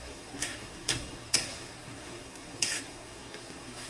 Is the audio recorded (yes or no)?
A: no